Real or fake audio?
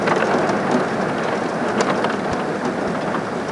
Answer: real